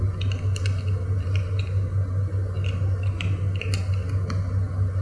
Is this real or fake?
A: real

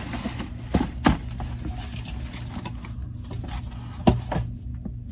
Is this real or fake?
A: real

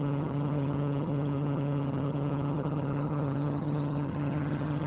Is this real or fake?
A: fake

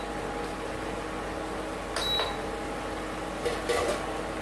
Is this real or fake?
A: real